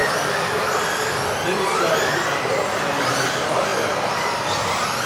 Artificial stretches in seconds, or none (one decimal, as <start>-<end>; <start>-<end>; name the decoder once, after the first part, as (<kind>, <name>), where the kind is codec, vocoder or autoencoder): none